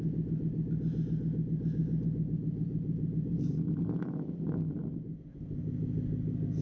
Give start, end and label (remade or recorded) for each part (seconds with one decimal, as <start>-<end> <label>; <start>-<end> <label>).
0.0-6.6 recorded